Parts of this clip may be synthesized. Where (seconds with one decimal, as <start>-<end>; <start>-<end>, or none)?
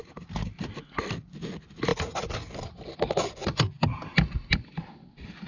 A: none